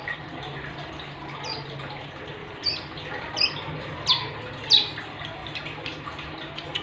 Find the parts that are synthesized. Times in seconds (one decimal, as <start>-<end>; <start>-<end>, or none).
none